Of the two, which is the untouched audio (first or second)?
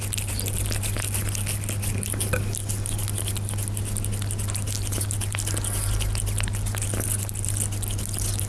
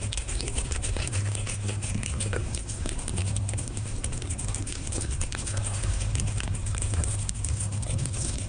first